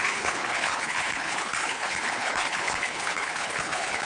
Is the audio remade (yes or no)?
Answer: yes